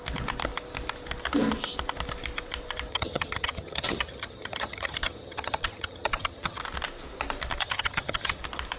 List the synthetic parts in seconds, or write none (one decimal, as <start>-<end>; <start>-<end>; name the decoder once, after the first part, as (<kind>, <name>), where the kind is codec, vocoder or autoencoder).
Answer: 2.9-6.6 (vocoder, HiFi-GAN); 7.6-8.4